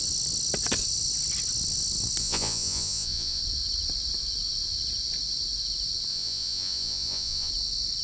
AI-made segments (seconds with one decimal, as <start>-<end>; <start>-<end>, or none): 2.2-3.4; 6.1-7.5